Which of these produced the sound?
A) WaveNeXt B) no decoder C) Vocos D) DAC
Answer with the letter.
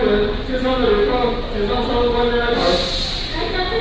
B